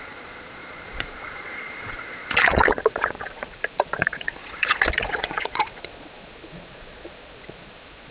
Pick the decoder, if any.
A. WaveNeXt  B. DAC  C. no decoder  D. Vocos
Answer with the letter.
D